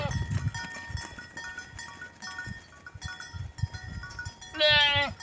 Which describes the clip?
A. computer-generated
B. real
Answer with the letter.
B